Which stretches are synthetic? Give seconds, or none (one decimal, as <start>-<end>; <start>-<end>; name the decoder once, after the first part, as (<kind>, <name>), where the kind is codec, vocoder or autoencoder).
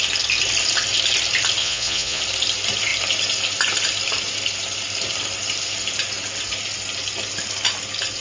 1.6-2.2 (vocoder, Vocos)